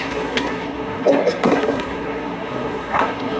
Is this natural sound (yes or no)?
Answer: no